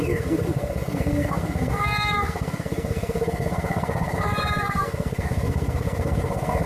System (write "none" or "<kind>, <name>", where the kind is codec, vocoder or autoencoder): codec, SNAC